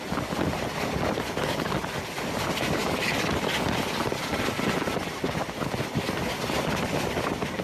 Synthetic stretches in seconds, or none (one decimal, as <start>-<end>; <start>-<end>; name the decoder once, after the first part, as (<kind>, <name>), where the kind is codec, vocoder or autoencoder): none